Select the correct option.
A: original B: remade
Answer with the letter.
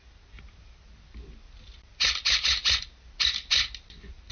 A